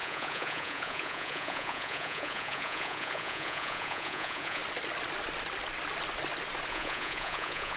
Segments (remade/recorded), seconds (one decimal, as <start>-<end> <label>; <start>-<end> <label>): 0.0-4.6 remade; 4.6-6.7 recorded; 6.7-7.8 remade